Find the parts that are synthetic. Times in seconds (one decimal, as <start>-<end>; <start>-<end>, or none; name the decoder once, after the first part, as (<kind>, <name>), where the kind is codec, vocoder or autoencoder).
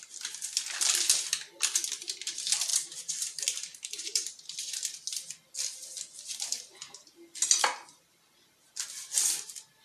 2.7-4.6 (vocoder, BigVGAN v2)